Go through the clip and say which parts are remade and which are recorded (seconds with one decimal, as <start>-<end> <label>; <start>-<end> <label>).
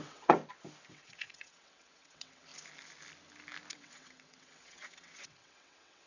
0.0-0.4 remade; 0.4-0.9 recorded; 0.9-2.5 remade; 2.5-3.7 recorded; 3.7-6.1 remade